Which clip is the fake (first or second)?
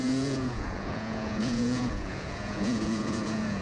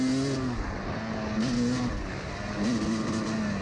first